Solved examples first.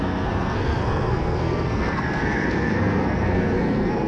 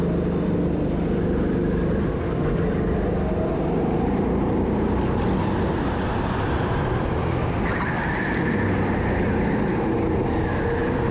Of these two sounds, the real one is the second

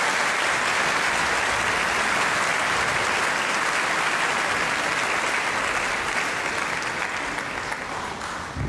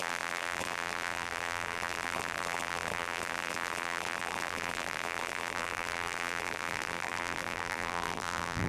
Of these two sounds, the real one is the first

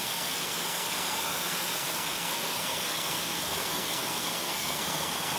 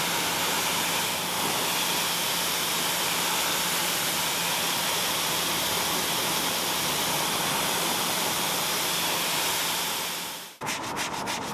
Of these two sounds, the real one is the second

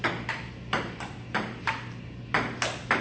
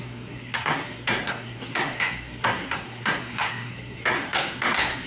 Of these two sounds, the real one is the first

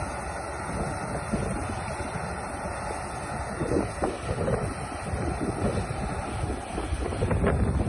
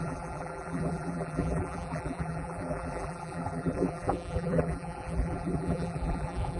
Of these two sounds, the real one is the first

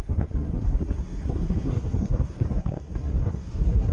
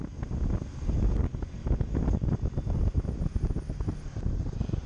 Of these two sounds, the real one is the second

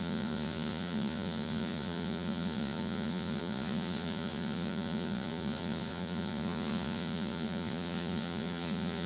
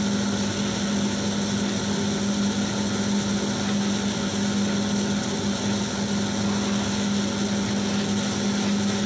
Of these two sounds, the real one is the second